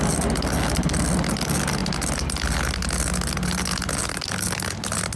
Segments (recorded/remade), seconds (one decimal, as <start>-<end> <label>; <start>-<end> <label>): 0.0-5.2 recorded